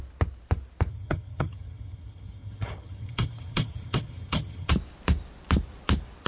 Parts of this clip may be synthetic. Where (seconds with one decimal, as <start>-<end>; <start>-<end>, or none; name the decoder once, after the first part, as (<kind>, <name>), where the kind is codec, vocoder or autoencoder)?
0.9-4.7 (vocoder, HiFi-GAN)